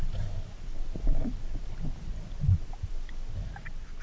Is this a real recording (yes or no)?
yes